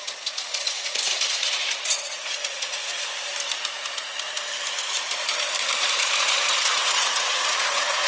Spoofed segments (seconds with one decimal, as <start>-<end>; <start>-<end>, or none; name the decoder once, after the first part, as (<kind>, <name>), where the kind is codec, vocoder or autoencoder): 0.0-3.3 (vocoder, Vocos); 5.8-8.1